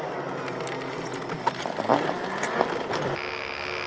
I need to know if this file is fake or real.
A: real